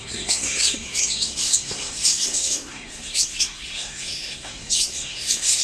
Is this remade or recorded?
remade